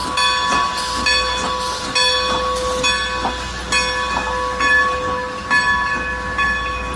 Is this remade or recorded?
recorded